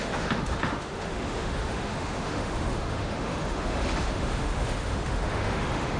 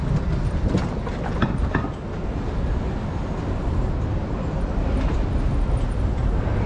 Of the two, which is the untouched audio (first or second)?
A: second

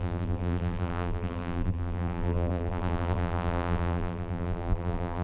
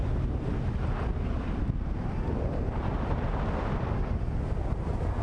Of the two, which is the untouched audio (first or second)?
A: second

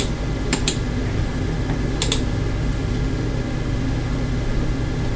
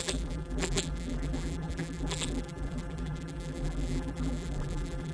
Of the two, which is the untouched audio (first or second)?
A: first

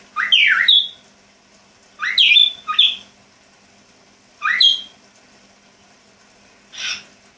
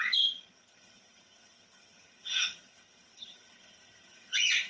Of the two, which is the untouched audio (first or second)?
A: first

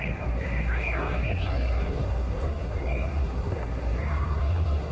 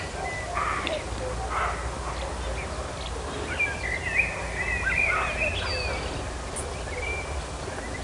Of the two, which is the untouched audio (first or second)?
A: second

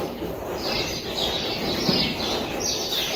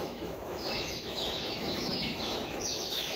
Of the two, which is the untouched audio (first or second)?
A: first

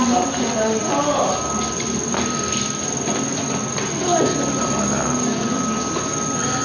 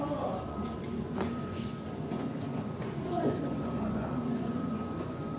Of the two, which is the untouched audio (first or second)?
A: first